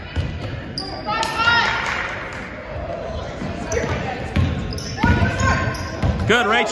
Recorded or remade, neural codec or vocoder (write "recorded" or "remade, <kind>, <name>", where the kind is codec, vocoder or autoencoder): recorded